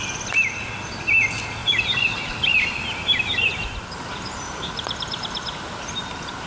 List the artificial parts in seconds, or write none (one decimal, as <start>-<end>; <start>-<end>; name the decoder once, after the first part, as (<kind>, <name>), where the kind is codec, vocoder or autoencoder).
1.6-5.5 (vocoder, BigVGAN v2)

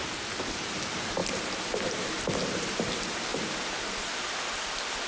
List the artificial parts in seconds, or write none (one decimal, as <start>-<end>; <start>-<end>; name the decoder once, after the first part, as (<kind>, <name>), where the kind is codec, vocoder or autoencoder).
0.0-1.2 (vocoder, BigVGAN v2); 1.8-3.3; 4.6-5.1